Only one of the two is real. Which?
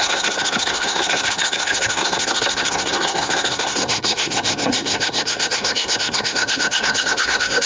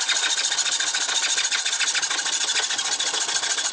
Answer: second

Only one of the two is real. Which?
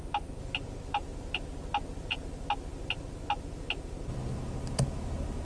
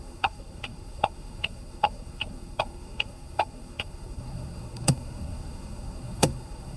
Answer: first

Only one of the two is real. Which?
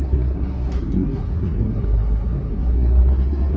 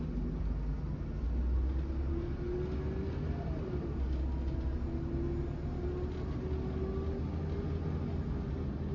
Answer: second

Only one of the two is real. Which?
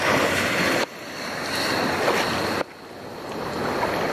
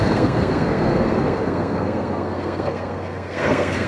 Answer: first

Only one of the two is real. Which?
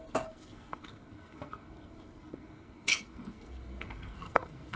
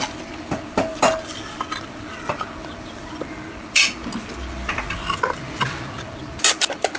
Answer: second